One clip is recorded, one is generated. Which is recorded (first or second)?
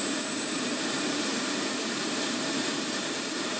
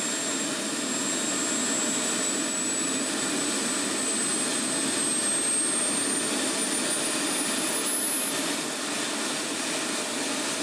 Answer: second